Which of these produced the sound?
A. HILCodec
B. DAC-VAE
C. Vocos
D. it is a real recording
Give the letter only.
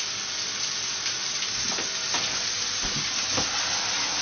D